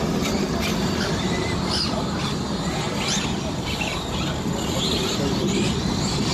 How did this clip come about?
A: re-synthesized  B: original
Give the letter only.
B